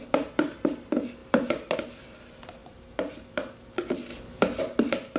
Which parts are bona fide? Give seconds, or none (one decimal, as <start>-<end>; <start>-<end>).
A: 0.0-2.6; 3.3-4.1; 4.6-5.2